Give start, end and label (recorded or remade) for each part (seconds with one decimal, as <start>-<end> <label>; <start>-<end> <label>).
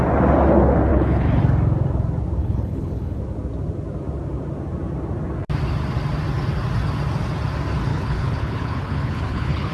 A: 0.0-0.9 recorded; 0.9-1.4 remade; 1.4-2.4 recorded; 2.4-3.2 remade; 3.2-7.9 recorded; 7.9-9.7 remade